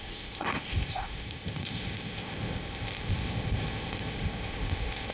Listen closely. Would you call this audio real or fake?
fake